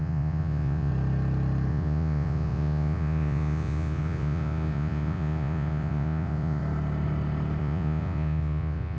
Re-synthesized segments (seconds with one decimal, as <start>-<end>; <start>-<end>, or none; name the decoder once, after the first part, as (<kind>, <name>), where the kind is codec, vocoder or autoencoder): 0.0-0.9 (vocoder, Vocos); 1.7-6.6; 7.6-9.0